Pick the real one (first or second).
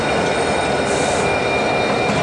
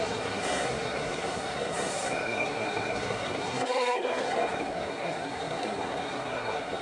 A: first